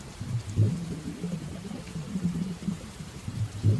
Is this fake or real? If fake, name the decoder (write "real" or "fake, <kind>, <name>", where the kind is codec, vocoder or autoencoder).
fake, vocoder, BigVGAN v2